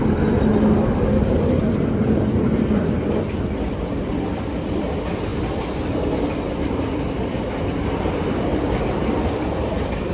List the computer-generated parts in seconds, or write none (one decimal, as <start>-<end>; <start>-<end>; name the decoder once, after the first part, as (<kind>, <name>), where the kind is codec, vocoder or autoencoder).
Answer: none